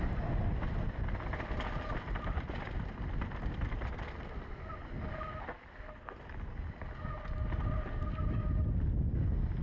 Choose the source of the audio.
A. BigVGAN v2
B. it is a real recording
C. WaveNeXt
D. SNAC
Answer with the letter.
B